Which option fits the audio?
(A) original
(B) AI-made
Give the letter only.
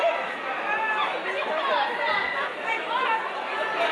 A